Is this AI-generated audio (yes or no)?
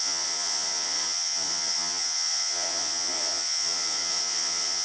yes